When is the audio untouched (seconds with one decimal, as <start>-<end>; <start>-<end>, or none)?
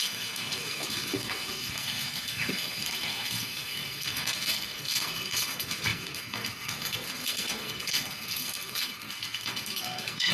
none